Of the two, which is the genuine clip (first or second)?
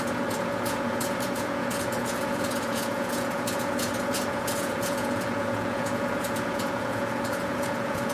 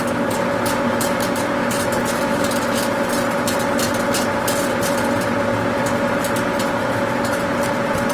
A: second